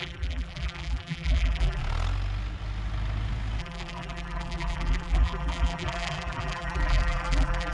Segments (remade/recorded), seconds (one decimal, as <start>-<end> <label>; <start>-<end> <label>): 0.0-1.8 remade; 1.8-3.6 recorded; 3.6-7.7 remade